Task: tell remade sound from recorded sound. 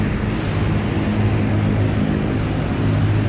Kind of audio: recorded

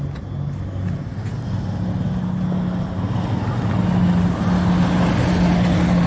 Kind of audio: recorded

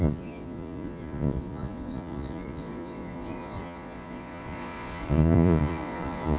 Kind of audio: remade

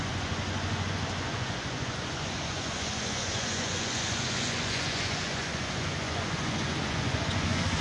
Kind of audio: remade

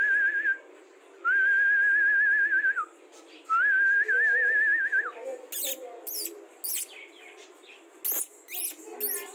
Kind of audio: recorded